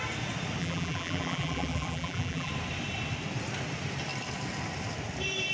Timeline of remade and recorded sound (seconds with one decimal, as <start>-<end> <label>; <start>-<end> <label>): 0.0-0.6 recorded; 0.6-2.5 remade; 2.5-5.5 recorded